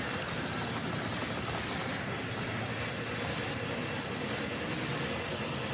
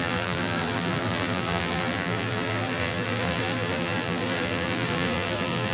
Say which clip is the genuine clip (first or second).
first